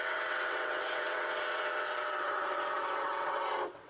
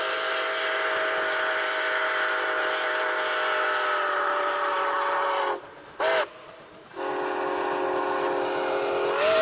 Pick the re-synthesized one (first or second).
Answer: first